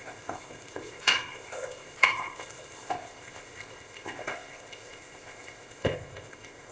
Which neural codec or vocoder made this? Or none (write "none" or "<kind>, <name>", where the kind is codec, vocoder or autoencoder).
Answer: codec, ZipCodec